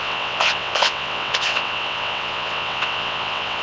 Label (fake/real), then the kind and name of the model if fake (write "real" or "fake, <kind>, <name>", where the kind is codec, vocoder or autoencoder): fake, vocoder, WaveNeXt